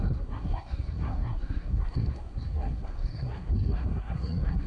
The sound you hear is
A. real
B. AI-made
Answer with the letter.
B